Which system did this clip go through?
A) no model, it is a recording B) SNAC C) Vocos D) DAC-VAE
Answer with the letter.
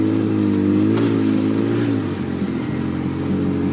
A